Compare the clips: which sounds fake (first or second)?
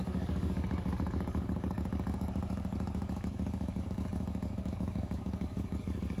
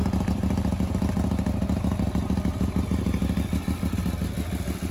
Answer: first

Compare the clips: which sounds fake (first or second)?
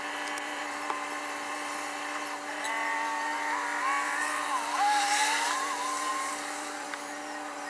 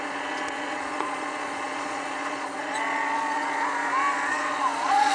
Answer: second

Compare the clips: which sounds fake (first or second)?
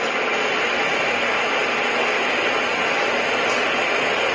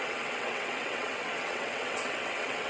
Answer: second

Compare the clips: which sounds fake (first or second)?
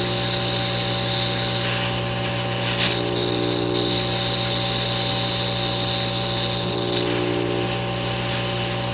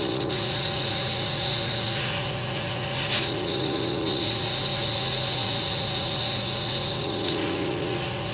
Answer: second